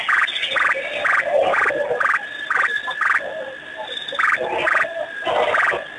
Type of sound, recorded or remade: recorded